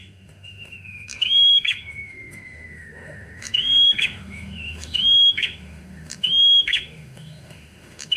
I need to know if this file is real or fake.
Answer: fake